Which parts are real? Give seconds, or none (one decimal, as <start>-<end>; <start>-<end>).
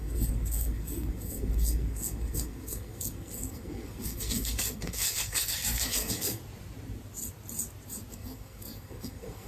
6.4-8.1